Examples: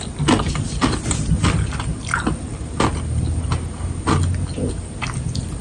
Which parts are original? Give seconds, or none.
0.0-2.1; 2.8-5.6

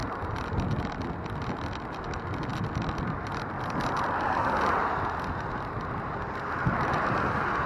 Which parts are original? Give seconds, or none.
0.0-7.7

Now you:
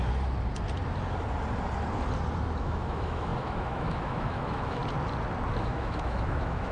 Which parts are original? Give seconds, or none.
0.0-2.6; 4.8-5.6

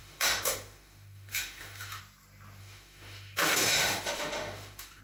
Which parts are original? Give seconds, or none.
2.0-2.6

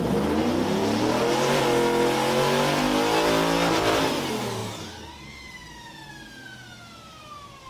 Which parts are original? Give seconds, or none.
0.0-7.7

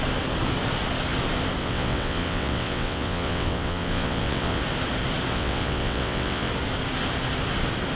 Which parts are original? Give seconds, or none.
0.0-1.6; 4.6-5.3; 6.5-8.0

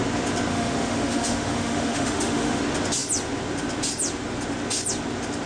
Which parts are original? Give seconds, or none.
0.0-0.5; 2.6-5.5

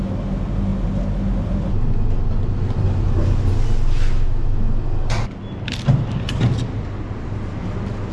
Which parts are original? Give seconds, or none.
0.0-8.1